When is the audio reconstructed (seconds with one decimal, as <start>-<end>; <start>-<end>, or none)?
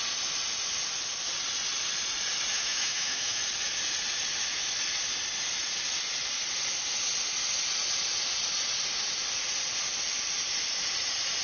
2.5-3.4